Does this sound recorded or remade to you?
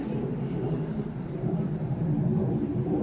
recorded